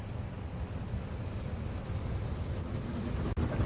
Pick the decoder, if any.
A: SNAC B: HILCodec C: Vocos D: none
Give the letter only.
D